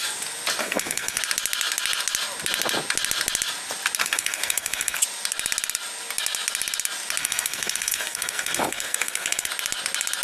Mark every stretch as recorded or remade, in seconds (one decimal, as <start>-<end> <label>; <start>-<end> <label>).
0.0-0.6 recorded; 0.6-1.2 remade; 1.2-4.0 recorded; 4.0-5.0 remade; 5.0-7.2 recorded; 7.2-9.5 remade; 9.5-10.2 recorded